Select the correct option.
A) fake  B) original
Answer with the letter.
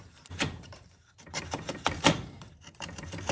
A